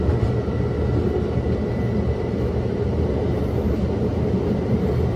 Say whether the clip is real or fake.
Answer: real